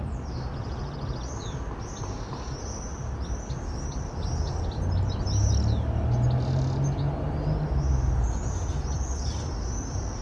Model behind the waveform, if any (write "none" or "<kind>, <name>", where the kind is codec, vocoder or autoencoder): none